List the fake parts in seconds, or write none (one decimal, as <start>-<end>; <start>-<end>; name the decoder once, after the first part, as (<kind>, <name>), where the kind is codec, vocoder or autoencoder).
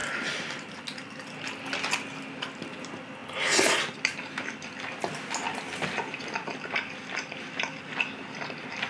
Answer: none